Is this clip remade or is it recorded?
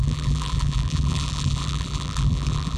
remade